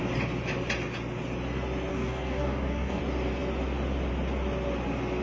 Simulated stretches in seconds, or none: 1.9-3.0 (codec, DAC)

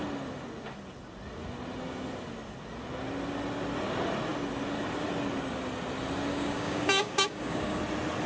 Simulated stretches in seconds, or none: 6.3-7.8 (codec, DAC)

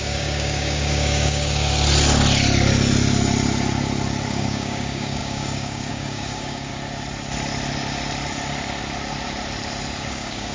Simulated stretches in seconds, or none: 0.0-1.7 (codec, DAC); 4.3-6.7; 10.1-10.5

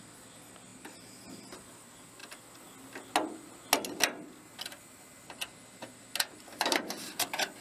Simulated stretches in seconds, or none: none

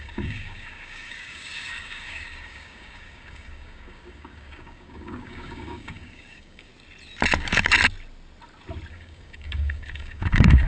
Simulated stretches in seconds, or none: 0.0-6.7 (codec, DAC); 8.9-10.7